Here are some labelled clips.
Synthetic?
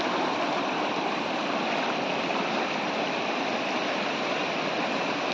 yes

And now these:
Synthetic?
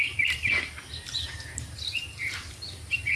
no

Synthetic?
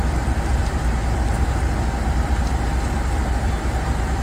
no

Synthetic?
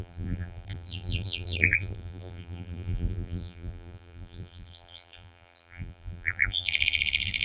yes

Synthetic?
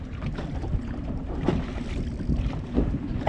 no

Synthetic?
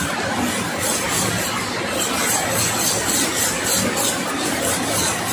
no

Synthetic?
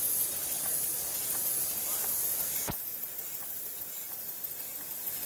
no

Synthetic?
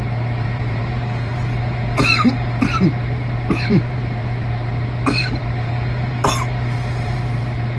yes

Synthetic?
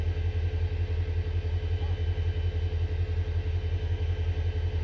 no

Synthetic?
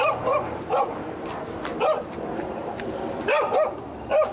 yes